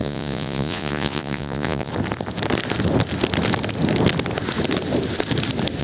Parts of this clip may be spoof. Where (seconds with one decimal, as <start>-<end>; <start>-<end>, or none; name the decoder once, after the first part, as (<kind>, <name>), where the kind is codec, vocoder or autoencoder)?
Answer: 0.0-1.9 (vocoder, Vocos)